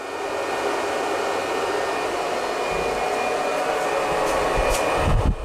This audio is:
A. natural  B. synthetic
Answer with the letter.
A